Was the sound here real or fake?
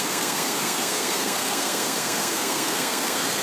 fake